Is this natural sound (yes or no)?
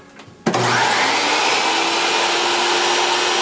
yes